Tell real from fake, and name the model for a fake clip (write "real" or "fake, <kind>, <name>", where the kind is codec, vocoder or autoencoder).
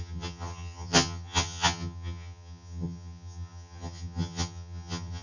fake, vocoder, HiFi-GAN